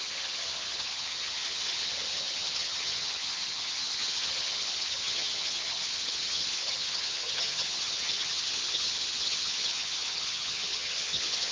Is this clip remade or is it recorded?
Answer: remade